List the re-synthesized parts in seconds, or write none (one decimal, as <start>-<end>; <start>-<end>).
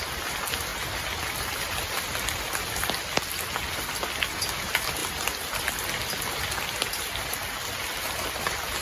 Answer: none